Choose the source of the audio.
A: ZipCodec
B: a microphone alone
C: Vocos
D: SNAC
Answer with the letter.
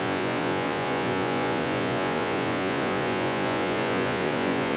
C